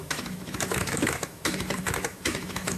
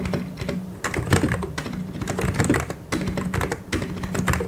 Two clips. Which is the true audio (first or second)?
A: second